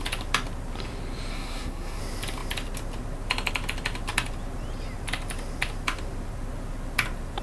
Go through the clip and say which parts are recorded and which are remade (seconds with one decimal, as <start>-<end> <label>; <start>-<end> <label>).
0.0-1.3 recorded; 1.3-2.0 remade; 2.0-7.4 recorded